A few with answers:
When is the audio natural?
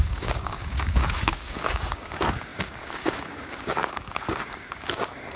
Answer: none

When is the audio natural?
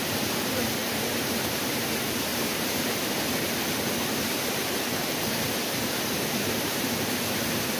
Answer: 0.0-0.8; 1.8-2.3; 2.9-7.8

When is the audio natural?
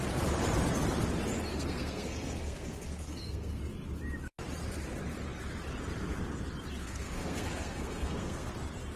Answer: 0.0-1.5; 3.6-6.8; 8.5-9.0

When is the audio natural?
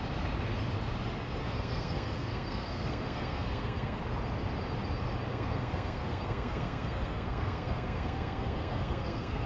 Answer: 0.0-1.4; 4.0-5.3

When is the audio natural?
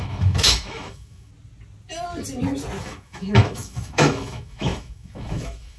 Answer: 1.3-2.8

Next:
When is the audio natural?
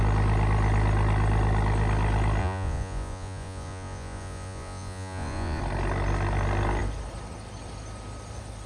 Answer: 0.0-2.4; 5.6-8.7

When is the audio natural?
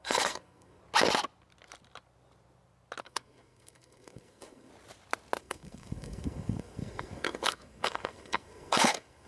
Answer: 0.8-3.0; 4.7-5.4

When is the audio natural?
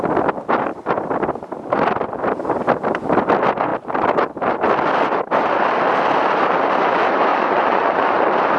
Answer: 0.0-7.3; 8.2-8.6